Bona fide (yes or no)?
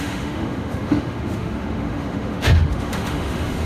no